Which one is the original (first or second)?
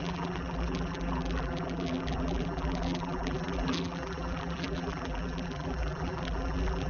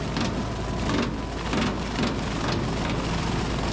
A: second